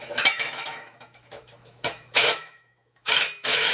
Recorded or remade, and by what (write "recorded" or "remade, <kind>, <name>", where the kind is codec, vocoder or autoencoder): remade, autoencoder, DAC-VAE